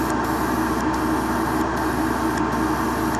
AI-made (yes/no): no